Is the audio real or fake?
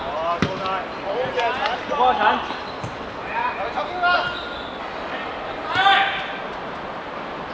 real